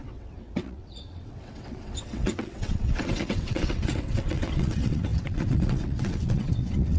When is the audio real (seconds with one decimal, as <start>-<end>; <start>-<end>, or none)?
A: none

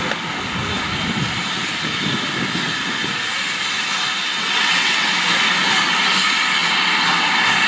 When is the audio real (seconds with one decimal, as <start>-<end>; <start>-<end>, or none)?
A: 0.0-4.3; 5.1-7.7

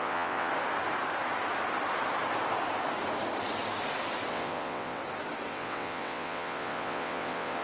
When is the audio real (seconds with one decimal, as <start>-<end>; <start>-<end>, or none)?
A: 0.5-4.3; 5.0-5.5

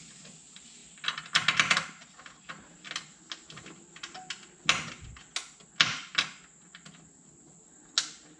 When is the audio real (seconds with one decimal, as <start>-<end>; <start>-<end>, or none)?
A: 0.0-8.4